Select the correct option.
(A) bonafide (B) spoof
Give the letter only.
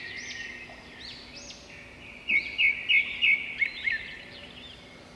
A